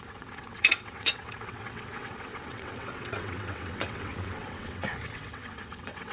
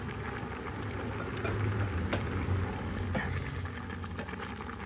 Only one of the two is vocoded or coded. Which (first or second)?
first